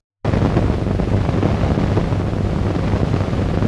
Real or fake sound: real